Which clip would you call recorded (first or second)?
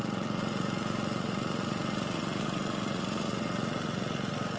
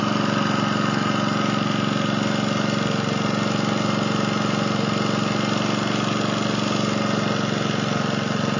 second